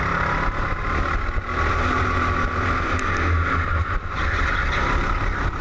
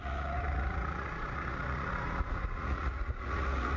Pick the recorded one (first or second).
first